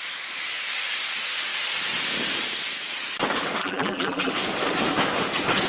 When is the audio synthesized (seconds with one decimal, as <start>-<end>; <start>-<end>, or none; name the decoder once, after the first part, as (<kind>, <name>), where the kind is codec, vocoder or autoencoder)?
3.6-4.3 (vocoder, BigVGAN v2)